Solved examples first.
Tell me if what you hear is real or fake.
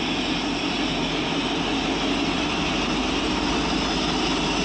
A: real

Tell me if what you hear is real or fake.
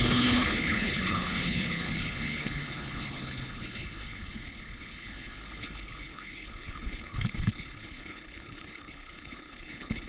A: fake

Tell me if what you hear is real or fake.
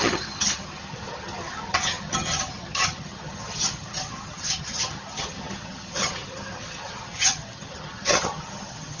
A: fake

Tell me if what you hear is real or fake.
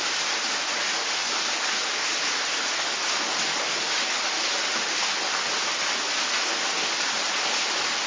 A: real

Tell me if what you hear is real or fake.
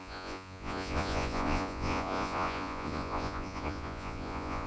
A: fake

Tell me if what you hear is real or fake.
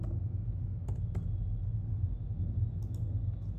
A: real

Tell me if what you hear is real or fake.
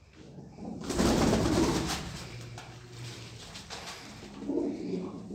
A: fake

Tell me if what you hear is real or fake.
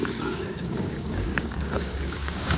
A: fake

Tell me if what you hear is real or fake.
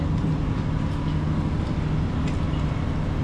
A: real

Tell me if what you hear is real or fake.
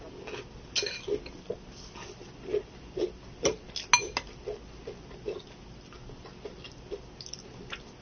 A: real